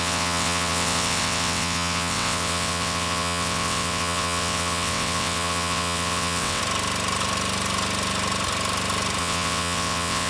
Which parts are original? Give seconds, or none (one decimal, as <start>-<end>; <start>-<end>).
6.6-9.2